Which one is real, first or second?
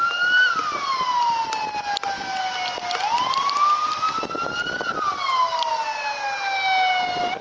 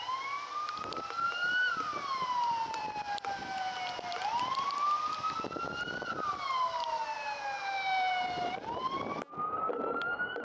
first